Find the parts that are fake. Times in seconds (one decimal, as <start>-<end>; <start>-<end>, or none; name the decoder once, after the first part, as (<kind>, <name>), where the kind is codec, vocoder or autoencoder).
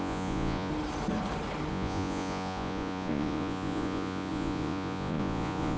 0.0-0.7 (vocoder, Vocos); 1.7-5.8